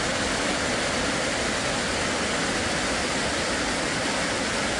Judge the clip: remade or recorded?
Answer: recorded